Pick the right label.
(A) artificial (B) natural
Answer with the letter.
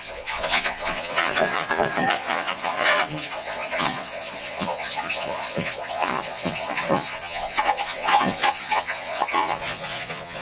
A